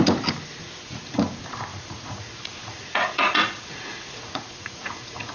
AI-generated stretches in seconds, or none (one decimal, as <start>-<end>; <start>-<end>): 0.6-1.2; 1.7-5.3